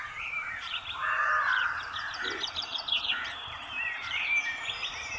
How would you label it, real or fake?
fake